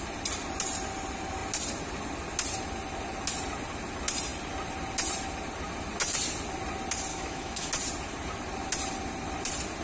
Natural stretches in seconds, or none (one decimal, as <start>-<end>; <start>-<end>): 0.0-7.1; 7.7-9.8